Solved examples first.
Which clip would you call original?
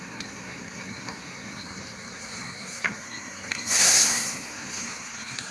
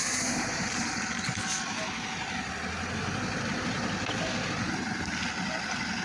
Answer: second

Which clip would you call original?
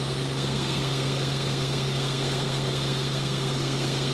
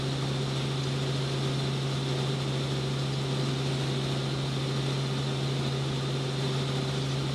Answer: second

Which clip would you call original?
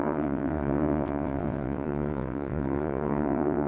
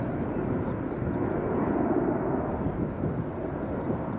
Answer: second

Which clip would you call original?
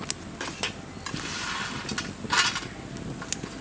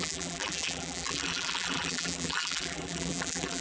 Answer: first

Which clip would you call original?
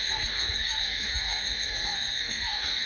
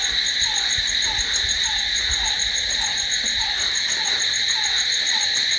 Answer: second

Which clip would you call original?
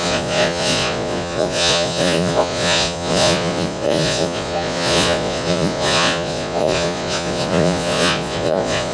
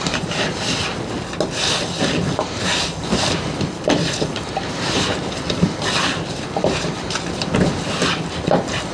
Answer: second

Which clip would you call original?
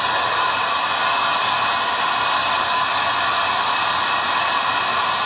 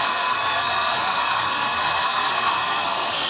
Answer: first